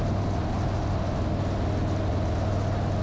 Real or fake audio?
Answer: real